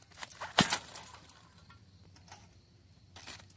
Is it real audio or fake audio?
real